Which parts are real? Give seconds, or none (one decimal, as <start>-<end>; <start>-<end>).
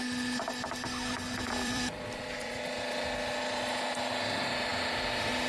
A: 0.0-1.4; 2.6-5.5